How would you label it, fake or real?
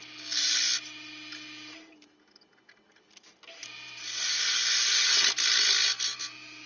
real